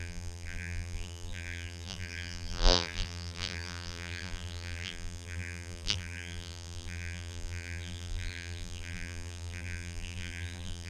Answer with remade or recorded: remade